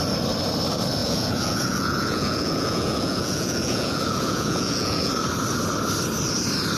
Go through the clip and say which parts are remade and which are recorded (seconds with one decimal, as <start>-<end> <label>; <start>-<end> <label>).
0.0-1.0 recorded; 1.0-5.1 remade; 5.1-6.8 recorded